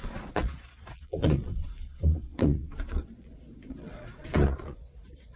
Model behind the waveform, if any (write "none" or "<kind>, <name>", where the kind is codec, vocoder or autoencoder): vocoder, Vocos